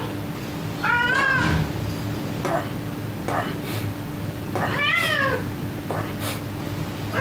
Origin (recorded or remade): recorded